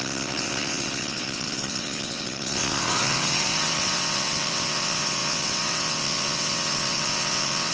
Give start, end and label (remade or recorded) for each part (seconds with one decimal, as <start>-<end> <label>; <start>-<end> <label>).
0.0-7.7 remade